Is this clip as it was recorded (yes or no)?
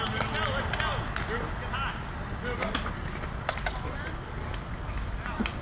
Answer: yes